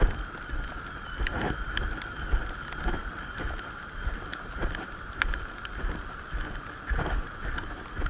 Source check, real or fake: real